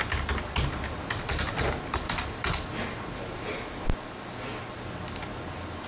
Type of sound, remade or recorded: recorded